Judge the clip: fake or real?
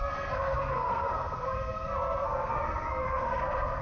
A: fake